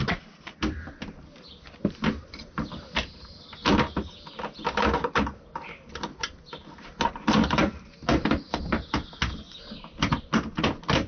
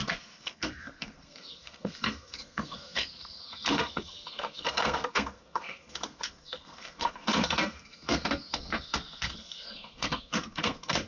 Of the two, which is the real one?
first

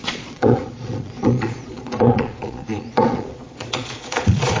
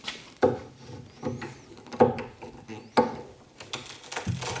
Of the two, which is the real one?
second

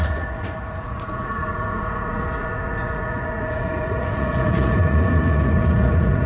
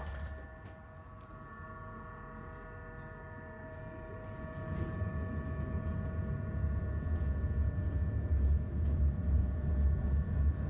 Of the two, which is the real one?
second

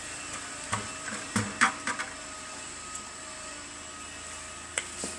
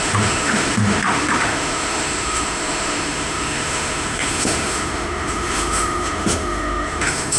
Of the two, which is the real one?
first